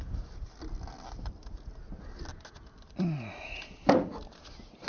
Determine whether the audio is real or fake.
real